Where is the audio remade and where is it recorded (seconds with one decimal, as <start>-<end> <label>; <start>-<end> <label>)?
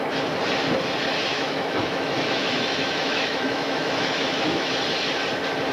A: 0.0-1.3 recorded; 1.3-4.7 remade; 4.7-5.7 recorded